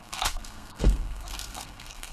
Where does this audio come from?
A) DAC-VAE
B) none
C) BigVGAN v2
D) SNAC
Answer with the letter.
D